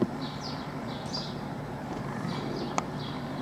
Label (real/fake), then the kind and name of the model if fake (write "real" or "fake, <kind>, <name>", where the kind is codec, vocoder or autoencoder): real